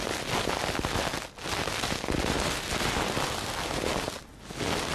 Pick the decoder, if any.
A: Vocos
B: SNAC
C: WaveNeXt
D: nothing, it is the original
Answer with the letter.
D